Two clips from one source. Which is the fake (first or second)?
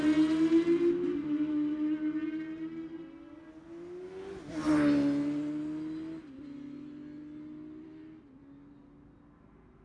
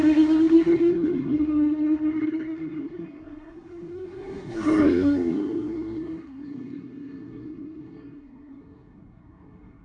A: second